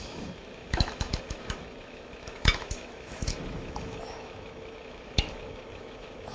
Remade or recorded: remade